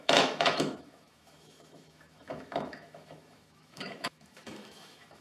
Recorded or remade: remade